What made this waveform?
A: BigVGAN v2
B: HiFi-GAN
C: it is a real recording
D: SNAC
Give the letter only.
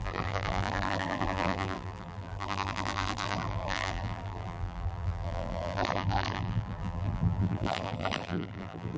A